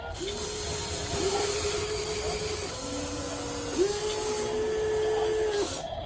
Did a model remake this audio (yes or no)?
no